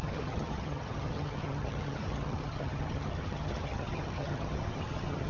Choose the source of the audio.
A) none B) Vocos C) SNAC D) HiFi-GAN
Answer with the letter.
D